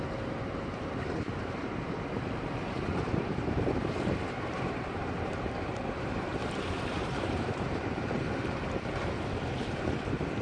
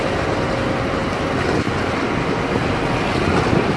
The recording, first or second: second